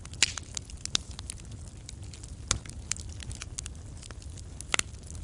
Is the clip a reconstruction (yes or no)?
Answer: no